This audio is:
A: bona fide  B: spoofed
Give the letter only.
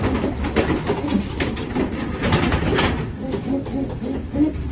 A